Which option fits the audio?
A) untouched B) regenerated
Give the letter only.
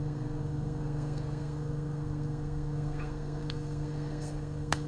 B